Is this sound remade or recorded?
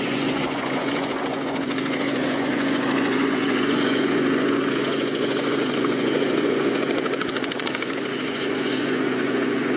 remade